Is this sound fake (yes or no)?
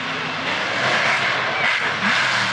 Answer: no